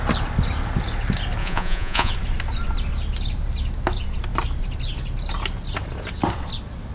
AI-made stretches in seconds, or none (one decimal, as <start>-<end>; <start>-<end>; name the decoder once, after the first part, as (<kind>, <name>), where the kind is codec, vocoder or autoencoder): 1.4-2.1 (vocoder, Vocos)